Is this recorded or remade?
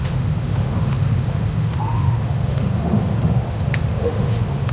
remade